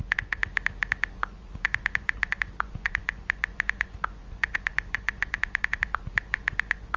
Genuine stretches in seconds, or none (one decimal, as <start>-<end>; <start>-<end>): 0.4-1.1